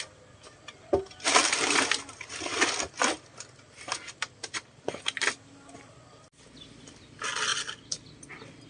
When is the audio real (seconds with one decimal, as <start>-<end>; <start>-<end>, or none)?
0.0-8.7